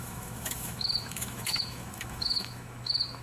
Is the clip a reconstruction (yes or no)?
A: yes